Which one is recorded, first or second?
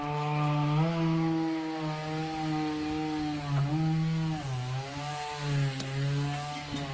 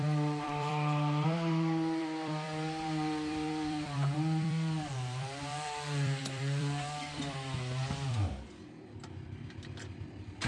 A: first